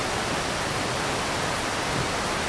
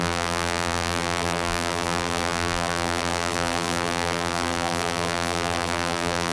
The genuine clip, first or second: first